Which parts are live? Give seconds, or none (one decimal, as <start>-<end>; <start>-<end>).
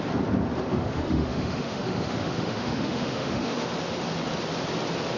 0.0-0.7; 3.7-5.2